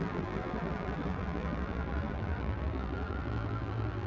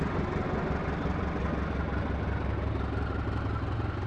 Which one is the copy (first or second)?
first